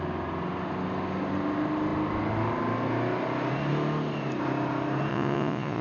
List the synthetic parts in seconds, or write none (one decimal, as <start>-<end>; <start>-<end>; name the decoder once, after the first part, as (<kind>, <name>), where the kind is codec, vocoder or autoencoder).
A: 5.1-5.8 (vocoder, Vocos)